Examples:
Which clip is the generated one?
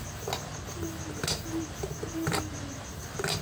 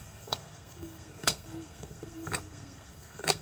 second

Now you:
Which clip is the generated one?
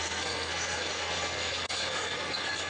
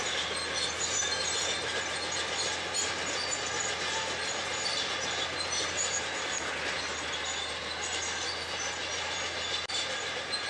first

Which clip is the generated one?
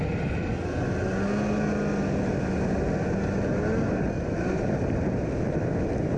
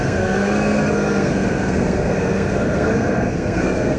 second